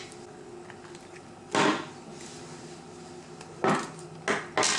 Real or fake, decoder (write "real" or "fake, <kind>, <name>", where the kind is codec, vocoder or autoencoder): real